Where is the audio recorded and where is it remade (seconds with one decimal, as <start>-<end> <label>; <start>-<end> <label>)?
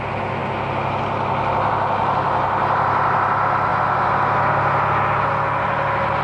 0.0-6.2 recorded